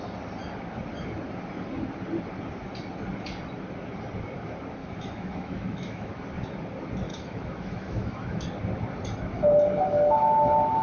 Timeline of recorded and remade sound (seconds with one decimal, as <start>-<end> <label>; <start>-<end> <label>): 0.0-4.8 recorded; 4.8-6.1 remade; 6.1-7.1 recorded; 7.1-8.4 remade; 8.4-10.8 recorded

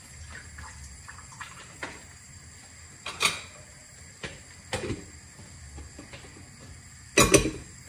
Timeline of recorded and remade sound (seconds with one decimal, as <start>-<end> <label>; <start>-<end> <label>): 0.0-1.3 recorded; 1.3-2.3 remade; 2.3-7.9 recorded